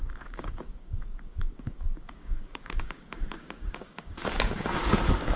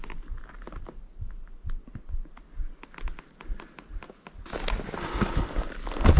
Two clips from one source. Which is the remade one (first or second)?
first